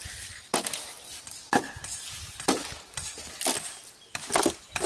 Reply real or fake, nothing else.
real